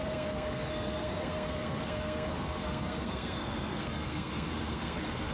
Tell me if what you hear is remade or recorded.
remade